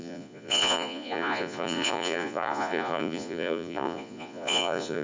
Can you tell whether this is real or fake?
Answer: fake